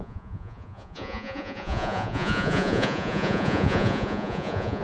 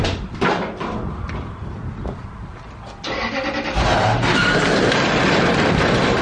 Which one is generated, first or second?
first